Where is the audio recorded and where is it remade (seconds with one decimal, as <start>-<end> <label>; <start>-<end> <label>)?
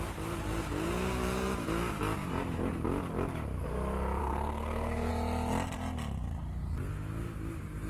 0.0-4.2 recorded; 4.2-5.1 remade; 5.1-7.9 recorded